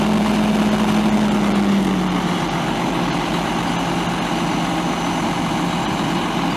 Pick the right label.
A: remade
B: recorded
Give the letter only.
B